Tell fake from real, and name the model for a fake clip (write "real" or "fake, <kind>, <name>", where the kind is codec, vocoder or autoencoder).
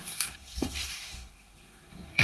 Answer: fake, codec, SNAC